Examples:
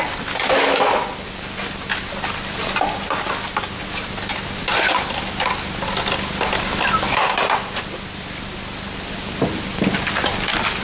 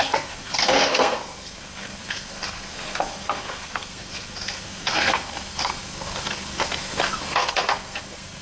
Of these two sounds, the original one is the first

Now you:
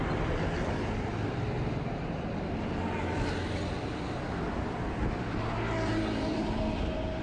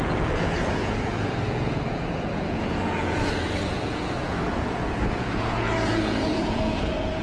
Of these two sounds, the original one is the first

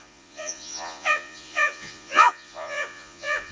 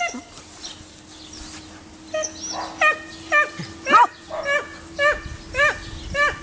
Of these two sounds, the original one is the second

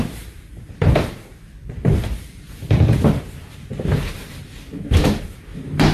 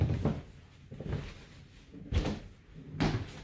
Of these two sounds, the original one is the second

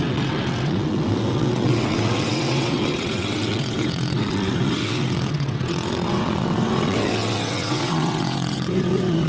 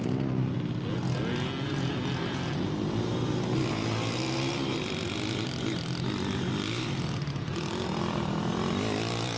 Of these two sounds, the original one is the second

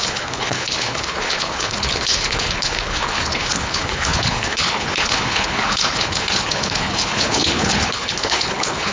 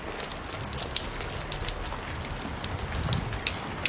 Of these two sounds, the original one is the second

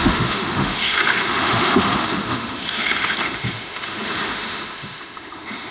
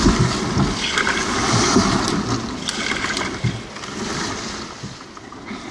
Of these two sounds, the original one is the second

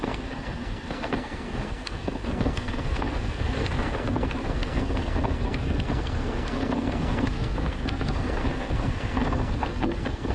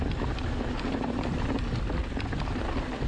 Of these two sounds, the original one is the second